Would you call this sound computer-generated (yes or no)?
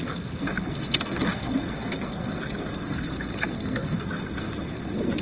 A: yes